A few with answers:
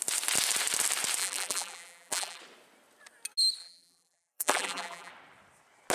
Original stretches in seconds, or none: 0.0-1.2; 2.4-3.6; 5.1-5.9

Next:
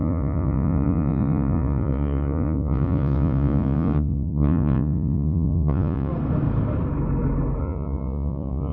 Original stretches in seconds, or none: 6.1-7.6

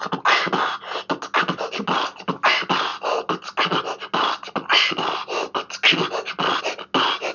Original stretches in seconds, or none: 0.0-7.3

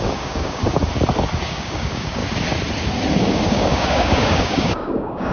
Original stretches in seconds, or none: 0.6-1.4; 2.2-3.2

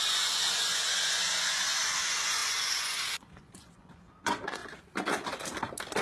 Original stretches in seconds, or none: 4.6-6.0